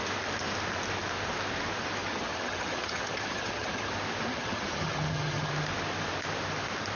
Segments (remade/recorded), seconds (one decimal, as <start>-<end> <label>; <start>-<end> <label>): 0.0-2.0 recorded; 2.0-3.9 remade; 3.9-4.3 recorded; 4.3-5.5 remade; 5.5-7.0 recorded